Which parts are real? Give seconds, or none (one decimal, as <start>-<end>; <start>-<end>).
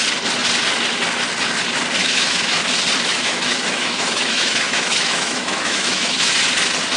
0.0-2.0; 2.6-3.1; 6.3-7.0